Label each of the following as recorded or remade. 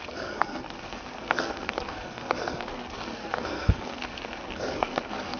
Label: remade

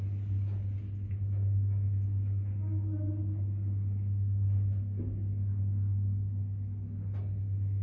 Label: recorded